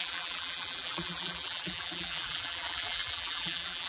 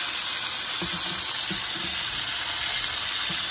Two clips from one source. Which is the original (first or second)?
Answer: second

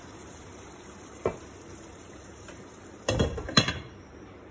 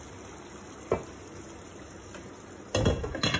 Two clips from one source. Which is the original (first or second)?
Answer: second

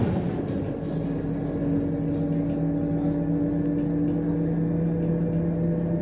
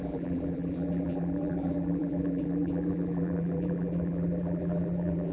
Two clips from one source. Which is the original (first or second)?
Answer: first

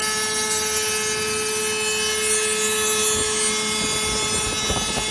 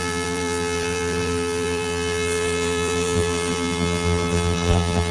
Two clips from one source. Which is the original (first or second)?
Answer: first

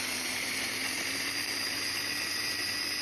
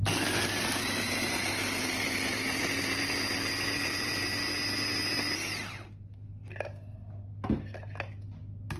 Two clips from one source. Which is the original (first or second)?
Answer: second